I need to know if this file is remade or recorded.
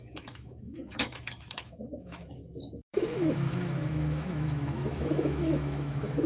remade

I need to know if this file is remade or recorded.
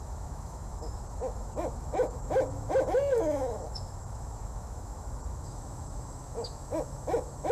remade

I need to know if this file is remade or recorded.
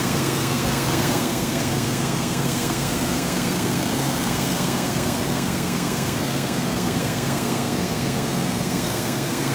remade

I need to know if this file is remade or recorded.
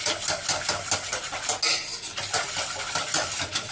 recorded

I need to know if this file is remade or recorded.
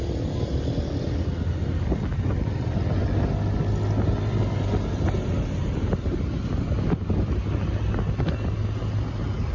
recorded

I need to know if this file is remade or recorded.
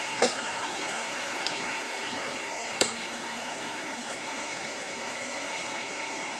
remade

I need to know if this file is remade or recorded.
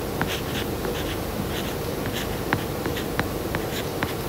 remade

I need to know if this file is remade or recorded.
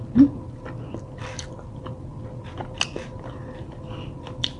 recorded